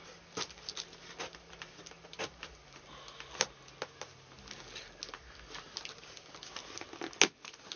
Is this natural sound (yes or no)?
yes